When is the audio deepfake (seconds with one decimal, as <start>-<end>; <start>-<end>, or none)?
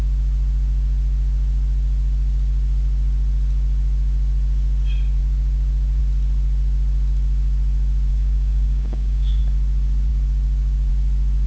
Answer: 8.1-9.4